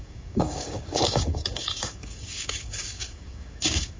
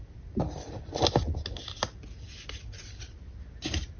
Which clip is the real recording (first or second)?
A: second